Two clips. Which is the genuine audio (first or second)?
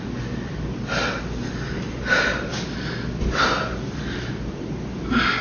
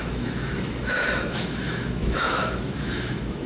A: first